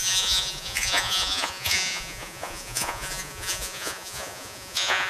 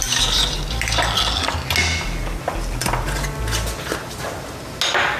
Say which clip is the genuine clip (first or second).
second